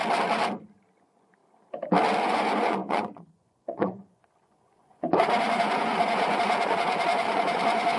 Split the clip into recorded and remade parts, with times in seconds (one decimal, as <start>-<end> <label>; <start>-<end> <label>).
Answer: 0.0-1.0 recorded; 1.0-1.4 remade; 1.4-2.2 recorded; 2.2-8.0 remade